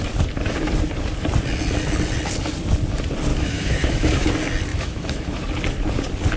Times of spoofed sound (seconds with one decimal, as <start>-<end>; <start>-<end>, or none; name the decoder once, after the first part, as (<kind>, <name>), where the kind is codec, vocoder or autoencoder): 3.3-4.3 (autoencoder, DAC-VAE); 4.7-5.4